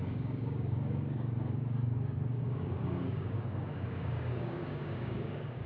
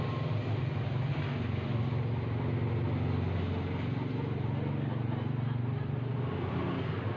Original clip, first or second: second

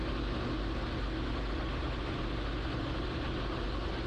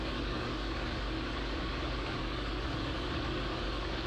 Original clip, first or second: first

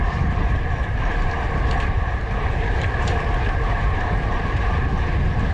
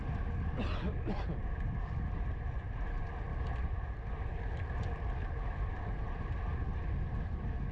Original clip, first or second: second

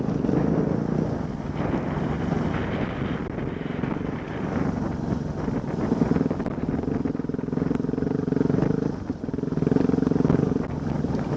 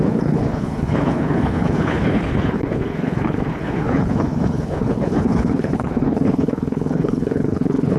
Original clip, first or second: first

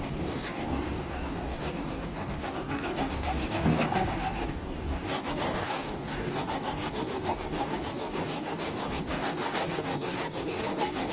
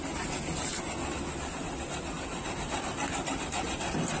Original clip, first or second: second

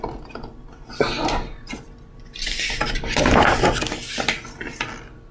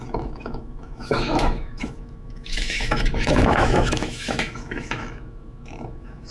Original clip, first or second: first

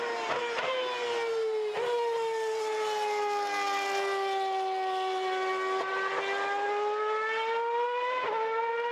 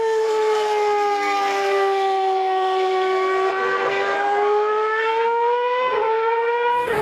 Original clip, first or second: first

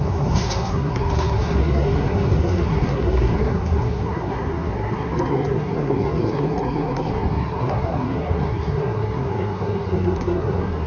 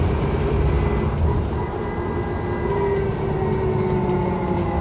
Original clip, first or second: second